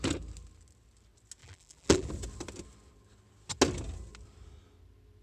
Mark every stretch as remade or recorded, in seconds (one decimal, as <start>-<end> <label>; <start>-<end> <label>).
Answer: 0.0-1.4 recorded; 1.4-2.1 remade; 2.1-5.2 recorded